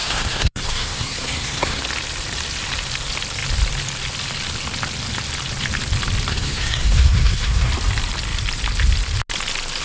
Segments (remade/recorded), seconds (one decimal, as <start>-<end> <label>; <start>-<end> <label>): 0.0-1.8 remade; 1.8-6.3 recorded; 6.3-7.7 remade; 7.7-9.8 recorded